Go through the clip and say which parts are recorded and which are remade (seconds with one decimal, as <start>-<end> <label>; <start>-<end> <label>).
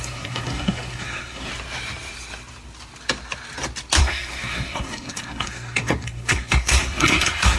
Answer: 0.0-1.5 remade; 1.5-4.0 recorded; 4.0-7.6 remade